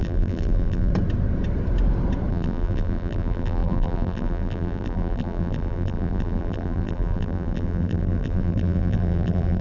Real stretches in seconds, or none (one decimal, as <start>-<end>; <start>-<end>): 0.9-2.3